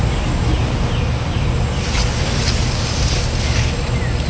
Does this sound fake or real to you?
real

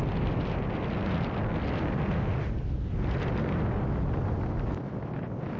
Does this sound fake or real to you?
real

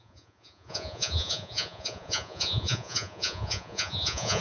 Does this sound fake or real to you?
fake